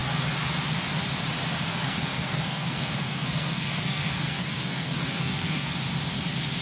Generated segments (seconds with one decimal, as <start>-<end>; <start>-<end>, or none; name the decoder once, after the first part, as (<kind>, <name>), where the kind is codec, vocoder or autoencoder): 1.7-5.7 (codec, SNAC)